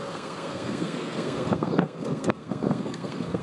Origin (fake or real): fake